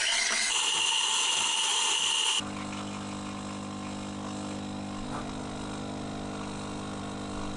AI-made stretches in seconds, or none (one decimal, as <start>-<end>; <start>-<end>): none